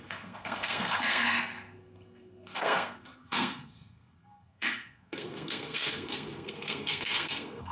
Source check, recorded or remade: remade